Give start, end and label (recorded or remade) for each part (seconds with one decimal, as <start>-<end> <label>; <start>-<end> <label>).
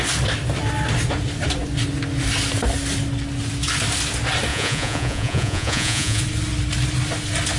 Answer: 0.0-4.5 recorded; 4.5-6.2 remade; 6.2-7.6 recorded